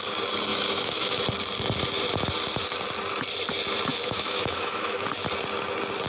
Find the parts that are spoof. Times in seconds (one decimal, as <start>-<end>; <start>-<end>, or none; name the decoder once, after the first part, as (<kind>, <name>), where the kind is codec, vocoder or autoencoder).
0.5-1.2 (autoencoder, DAC-VAE); 3.9-5.1